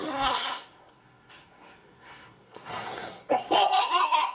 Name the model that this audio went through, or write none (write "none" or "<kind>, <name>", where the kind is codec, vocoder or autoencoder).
codec, SNAC